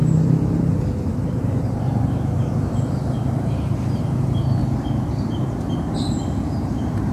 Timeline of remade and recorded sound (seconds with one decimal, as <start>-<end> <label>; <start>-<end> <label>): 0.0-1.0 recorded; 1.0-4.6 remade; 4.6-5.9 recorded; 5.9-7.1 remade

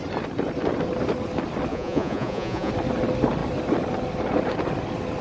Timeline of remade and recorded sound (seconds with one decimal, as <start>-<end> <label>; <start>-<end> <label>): 0.0-1.7 recorded; 1.7-2.7 remade; 2.7-5.2 recorded

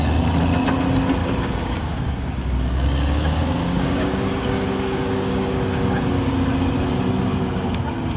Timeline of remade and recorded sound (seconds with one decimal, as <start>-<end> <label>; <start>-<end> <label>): 0.0-1.2 recorded; 1.2-6.0 remade; 6.0-8.2 recorded